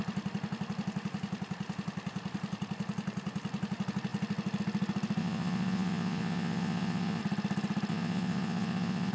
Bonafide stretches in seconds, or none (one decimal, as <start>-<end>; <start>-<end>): 0.0-5.2; 7.2-7.9